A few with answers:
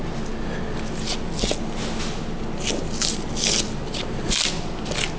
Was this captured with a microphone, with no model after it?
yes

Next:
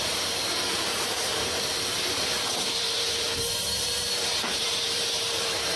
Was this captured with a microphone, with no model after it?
no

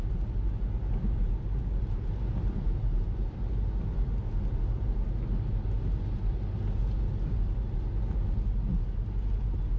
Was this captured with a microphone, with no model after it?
yes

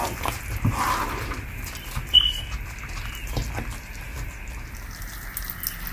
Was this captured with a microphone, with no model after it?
yes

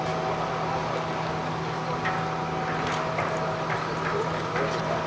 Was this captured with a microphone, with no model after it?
yes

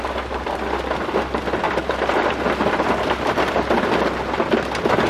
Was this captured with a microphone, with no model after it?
yes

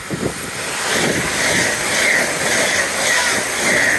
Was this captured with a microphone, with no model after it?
yes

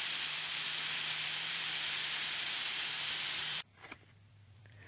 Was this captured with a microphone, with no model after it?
no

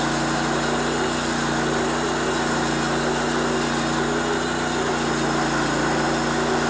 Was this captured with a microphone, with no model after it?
yes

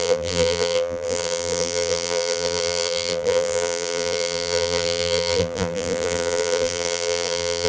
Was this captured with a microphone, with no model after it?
no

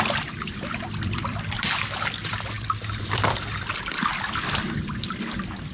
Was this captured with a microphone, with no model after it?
no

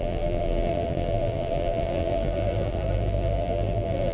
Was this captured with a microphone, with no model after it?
no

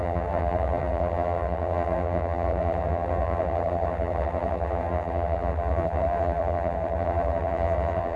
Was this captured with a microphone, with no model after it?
no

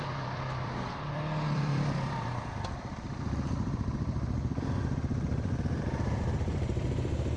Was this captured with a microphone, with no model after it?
no